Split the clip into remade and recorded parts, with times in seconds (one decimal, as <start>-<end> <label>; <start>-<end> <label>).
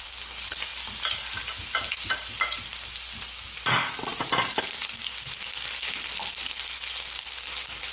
0.0-4.1 recorded; 4.1-5.0 remade; 5.0-7.9 recorded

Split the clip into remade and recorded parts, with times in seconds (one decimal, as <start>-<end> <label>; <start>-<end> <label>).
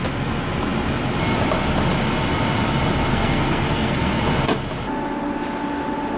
0.0-3.1 recorded; 3.1-4.2 remade; 4.2-6.2 recorded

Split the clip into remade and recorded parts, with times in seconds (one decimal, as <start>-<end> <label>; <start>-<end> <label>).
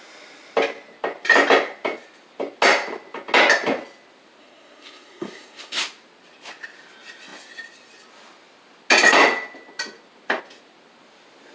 0.0-4.4 recorded; 4.4-5.8 remade; 5.8-11.5 recorded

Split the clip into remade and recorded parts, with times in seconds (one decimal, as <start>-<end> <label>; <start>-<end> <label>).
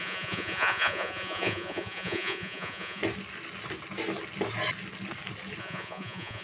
0.0-3.0 remade; 3.0-5.6 recorded; 5.6-6.4 remade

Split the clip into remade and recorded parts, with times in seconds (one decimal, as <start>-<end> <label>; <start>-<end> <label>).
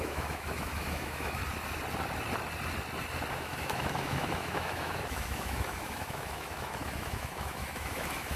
0.0-1.4 remade; 1.4-3.3 recorded; 3.3-8.4 remade